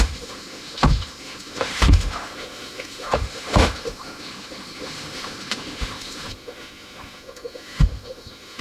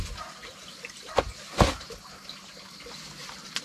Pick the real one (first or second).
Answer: second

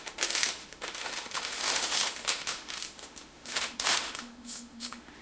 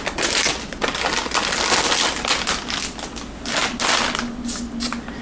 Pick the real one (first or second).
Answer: second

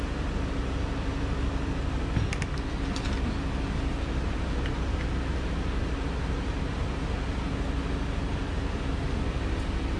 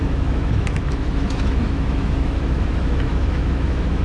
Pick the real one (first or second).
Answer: first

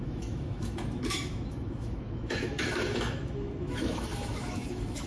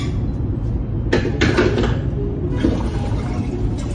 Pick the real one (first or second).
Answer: second